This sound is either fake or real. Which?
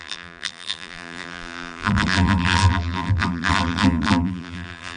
fake